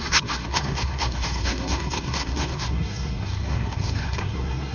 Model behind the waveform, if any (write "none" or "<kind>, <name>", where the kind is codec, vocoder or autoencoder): codec, SNAC